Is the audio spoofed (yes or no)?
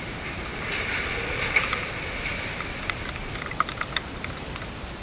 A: no